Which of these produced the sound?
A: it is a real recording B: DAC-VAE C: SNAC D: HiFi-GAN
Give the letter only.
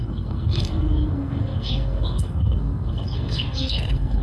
C